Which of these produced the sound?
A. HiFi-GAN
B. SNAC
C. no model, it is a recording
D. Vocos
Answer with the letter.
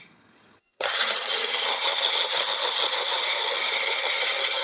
A